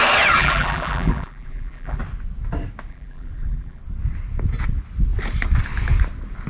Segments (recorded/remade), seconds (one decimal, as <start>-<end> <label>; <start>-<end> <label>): 0.0-0.4 recorded; 0.4-2.0 remade; 2.0-2.9 recorded; 2.9-3.8 remade; 3.8-6.5 recorded